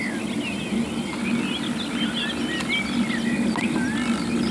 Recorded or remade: recorded